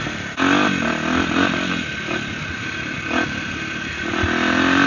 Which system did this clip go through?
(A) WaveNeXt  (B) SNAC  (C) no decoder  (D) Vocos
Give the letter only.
C